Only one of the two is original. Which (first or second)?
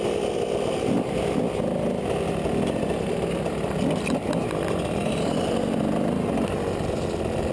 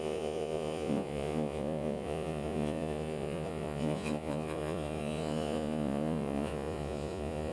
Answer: first